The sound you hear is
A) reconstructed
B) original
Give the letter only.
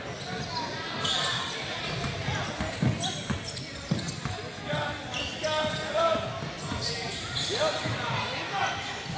B